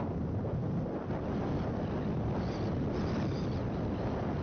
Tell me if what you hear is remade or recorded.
recorded